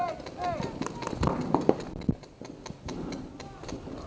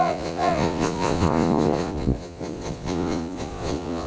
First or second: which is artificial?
second